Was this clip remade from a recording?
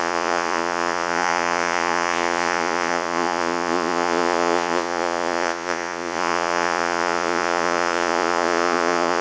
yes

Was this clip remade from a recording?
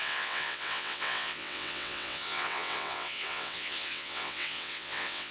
yes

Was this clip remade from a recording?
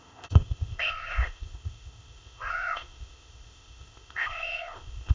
yes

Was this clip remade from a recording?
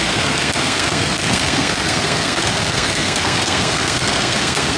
yes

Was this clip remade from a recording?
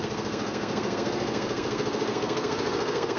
yes